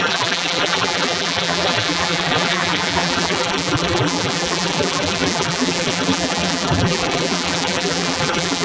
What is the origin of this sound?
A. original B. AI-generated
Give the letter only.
B